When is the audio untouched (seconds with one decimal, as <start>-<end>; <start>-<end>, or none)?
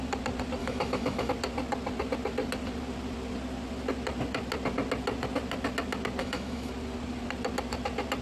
0.0-0.6; 1.3-6.2; 6.7-8.2